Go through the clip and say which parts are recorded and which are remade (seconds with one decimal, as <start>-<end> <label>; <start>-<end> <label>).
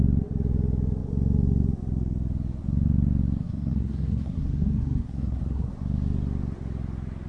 0.0-3.4 recorded; 3.4-5.7 remade; 5.7-7.3 recorded